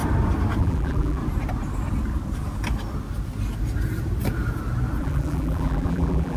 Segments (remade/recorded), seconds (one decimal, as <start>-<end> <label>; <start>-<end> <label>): 0.0-0.6 recorded; 0.6-1.2 remade; 1.2-5.0 recorded; 5.0-6.4 remade